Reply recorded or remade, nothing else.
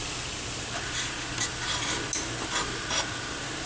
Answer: recorded